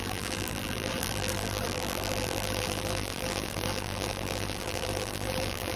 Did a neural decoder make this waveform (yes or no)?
yes